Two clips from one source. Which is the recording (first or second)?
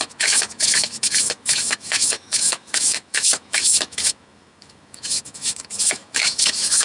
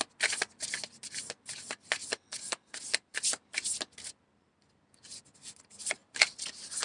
second